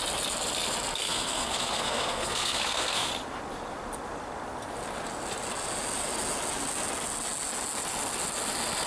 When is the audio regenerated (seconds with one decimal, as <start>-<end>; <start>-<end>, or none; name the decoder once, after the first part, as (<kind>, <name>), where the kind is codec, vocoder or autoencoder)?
1.0-3.1 (codec, SNAC)

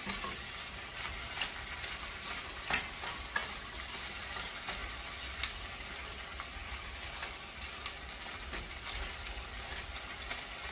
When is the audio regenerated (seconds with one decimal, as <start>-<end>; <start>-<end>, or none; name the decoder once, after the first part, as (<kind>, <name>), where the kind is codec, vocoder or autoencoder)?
none

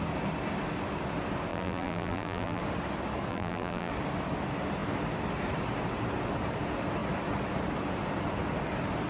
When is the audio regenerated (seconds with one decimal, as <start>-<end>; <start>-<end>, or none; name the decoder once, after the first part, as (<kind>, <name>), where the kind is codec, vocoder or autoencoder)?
1.5-2.6 (vocoder, BigVGAN v2); 3.3-3.9

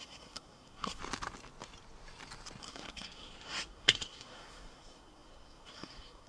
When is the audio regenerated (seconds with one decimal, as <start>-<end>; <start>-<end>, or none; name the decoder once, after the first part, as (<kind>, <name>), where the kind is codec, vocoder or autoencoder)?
0.0-1.0 (codec, SNAC); 2.6-6.3

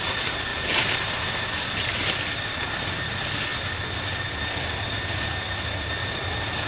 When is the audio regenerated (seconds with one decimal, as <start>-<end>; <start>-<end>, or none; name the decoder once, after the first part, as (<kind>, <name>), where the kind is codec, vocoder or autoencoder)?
none

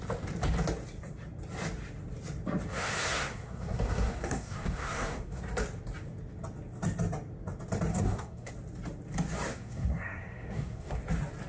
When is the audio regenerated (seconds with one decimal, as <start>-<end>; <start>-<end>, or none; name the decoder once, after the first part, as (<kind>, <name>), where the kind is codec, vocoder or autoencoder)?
2.7-5.4 (codec, SNAC); 7.9-8.5; 9.5-11.0